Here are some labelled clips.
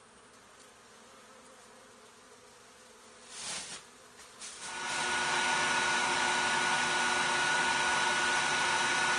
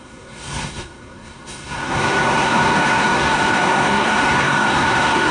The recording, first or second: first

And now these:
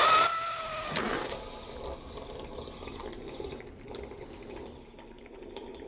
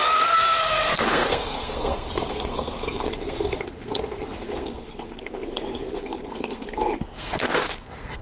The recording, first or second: first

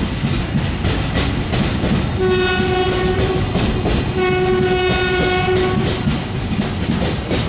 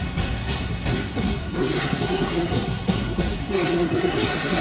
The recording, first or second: first